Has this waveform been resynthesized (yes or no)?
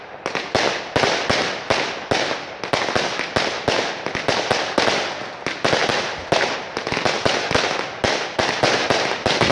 no